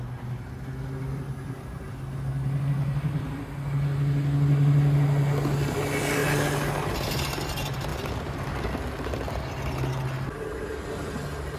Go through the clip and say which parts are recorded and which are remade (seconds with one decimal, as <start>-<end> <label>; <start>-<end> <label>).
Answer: 0.0-7.9 recorded; 7.9-8.7 remade; 8.7-11.6 recorded